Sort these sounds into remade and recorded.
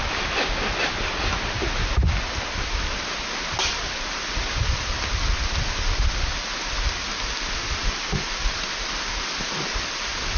recorded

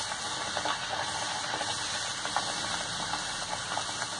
recorded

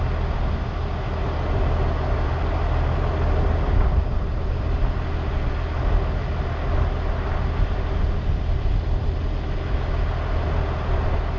recorded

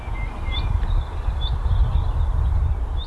recorded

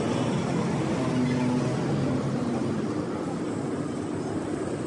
recorded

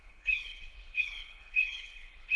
remade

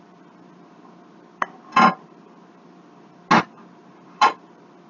recorded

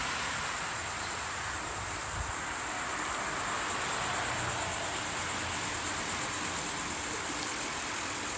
recorded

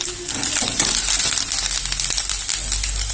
recorded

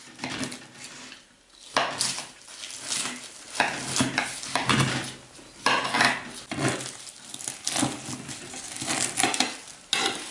recorded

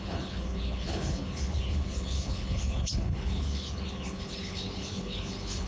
remade